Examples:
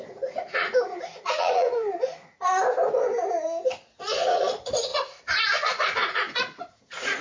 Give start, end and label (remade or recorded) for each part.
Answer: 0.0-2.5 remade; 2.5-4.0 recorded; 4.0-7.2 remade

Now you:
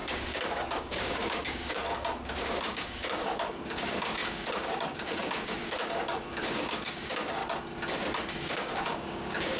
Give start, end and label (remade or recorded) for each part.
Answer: 0.0-7.4 remade; 7.4-8.4 recorded; 8.4-9.6 remade